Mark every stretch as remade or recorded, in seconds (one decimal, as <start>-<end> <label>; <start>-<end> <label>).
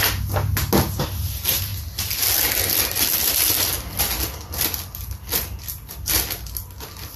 0.0-7.2 recorded